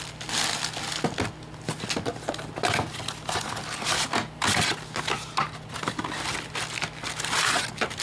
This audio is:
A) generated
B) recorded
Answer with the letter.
B